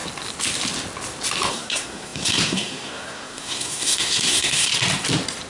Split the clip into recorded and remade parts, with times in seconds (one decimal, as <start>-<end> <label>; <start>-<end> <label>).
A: 0.0-1.5 recorded; 1.5-4.7 remade; 4.7-5.5 recorded